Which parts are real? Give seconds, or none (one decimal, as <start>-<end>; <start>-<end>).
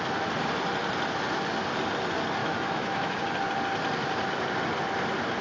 0.0-2.4; 3.2-5.4